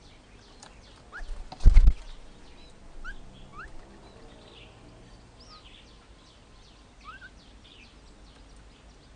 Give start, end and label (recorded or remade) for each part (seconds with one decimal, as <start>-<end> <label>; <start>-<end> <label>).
0.0-9.2 recorded